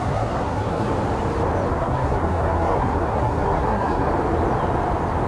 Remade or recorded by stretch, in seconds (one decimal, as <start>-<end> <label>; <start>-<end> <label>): 0.0-0.9 remade; 0.9-1.7 recorded; 1.7-4.1 remade; 4.1-5.3 recorded